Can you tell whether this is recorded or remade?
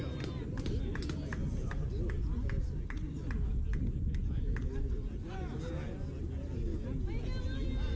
recorded